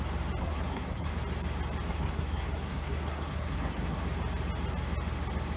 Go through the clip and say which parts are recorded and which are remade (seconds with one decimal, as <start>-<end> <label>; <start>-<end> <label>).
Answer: 0.0-0.4 recorded; 0.4-1.1 remade; 1.1-1.9 recorded; 1.9-4.0 remade; 4.0-5.6 recorded